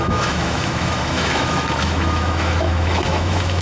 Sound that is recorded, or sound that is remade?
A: remade